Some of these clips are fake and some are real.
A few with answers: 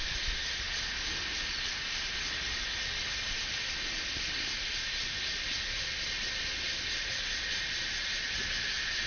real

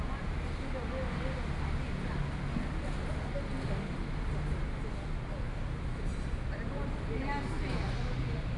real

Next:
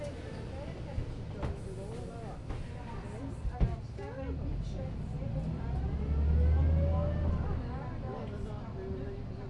real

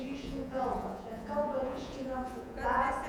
fake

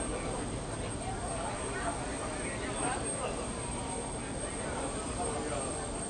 real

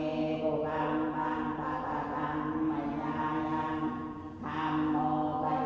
real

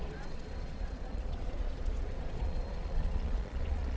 fake